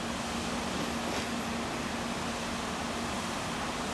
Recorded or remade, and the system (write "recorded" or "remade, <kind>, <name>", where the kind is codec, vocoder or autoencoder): recorded